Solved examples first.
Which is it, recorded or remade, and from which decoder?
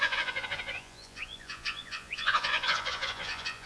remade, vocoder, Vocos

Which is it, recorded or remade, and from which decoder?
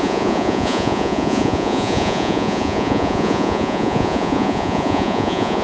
remade, vocoder, Vocos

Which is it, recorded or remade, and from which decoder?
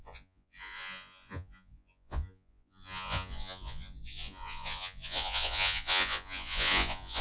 remade, vocoder, Vocos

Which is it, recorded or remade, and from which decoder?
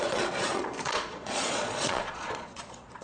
remade, vocoder, Vocos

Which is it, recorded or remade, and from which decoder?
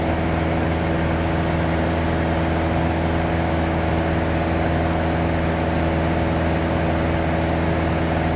recorded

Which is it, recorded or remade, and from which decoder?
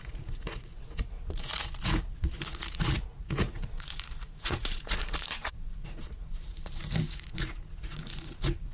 remade, vocoder, Vocos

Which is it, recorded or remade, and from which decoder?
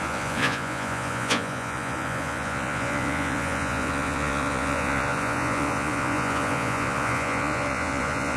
remade, vocoder, Vocos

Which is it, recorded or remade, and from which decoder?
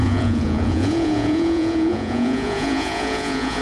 remade, vocoder, Vocos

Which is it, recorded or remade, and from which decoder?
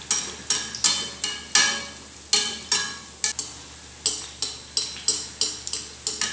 recorded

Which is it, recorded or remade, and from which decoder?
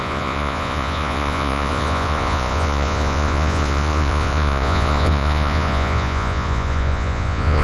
remade, vocoder, Vocos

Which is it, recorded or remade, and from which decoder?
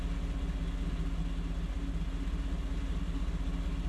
recorded